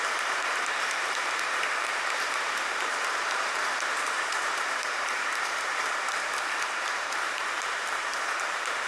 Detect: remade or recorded remade